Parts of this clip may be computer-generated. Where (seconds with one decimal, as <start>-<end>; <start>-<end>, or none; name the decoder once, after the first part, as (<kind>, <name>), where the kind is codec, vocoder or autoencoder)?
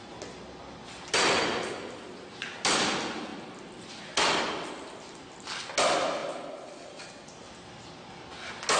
none